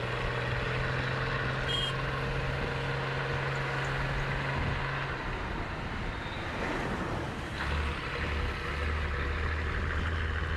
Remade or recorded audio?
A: recorded